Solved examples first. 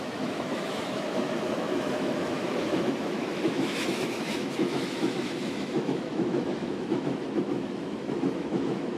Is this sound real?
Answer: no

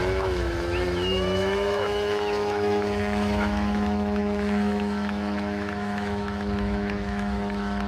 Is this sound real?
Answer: no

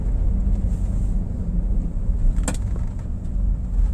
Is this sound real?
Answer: yes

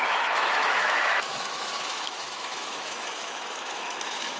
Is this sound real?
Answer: no